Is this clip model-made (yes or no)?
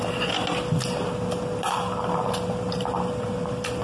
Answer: no